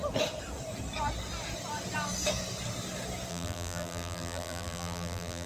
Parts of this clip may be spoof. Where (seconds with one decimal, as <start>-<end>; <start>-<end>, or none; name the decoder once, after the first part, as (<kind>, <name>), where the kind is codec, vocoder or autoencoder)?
3.3-5.5 (vocoder, BigVGAN v2)